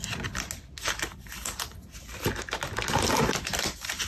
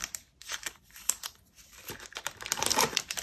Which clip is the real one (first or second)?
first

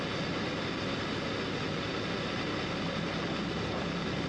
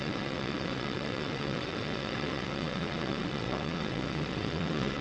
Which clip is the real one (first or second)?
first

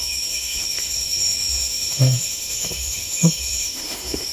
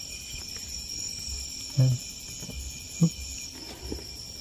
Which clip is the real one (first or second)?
second